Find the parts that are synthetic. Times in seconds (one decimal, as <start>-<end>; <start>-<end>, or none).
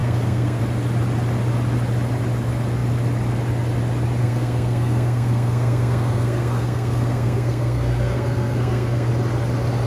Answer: 0.0-0.6; 4.2-9.1